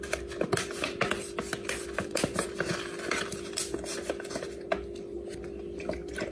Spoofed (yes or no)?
no